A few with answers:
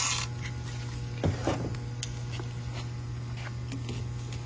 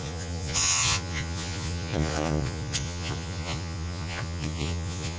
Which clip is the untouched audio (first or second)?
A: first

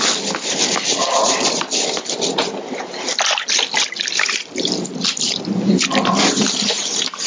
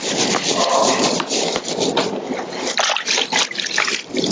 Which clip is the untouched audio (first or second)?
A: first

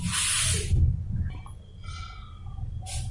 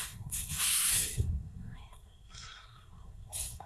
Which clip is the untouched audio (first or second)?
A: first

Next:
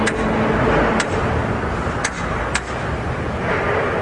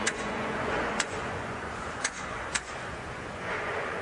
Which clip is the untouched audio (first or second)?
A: first